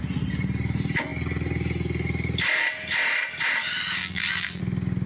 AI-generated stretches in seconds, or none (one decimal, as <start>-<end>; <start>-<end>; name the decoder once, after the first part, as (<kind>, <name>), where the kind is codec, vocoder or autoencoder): 4.0-4.6 (vocoder, BigVGAN v2)